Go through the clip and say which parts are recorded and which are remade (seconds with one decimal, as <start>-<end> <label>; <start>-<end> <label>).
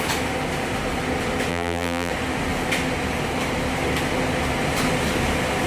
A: 0.0-1.5 recorded; 1.5-2.1 remade; 2.1-5.7 recorded